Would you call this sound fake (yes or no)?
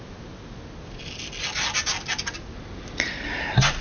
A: no